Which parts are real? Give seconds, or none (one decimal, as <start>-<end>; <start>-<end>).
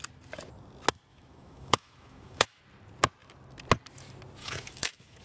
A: 0.0-1.1; 2.6-4.4